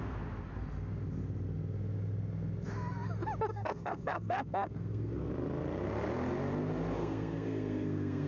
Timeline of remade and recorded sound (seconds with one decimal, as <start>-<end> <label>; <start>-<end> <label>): 0.0-3.5 recorded; 3.5-5.3 remade; 5.3-7.0 recorded; 7.0-8.3 remade